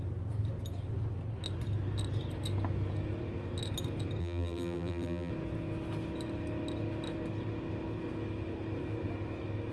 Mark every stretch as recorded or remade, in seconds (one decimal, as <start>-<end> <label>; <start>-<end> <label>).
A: 0.0-4.2 recorded; 4.2-5.3 remade; 5.3-9.7 recorded